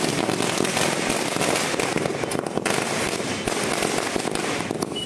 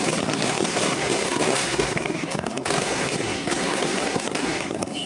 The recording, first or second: first